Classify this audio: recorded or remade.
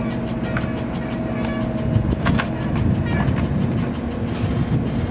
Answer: recorded